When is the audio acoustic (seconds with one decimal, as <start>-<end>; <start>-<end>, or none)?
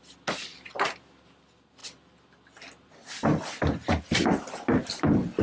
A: 0.0-5.4